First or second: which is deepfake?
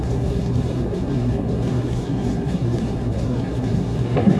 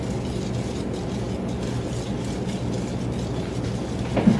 first